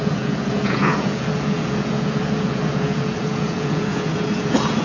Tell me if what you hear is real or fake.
fake